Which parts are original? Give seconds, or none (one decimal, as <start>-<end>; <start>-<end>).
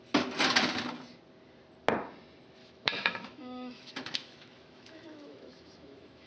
0.0-2.6